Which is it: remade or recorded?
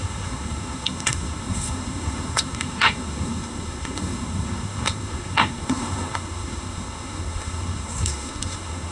remade